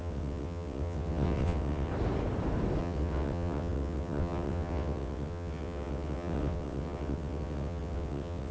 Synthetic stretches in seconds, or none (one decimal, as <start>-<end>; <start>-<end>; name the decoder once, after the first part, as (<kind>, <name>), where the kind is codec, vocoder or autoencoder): 0.0-1.9 (vocoder, WaveNeXt); 2.8-8.5